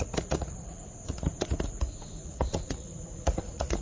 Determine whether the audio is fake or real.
fake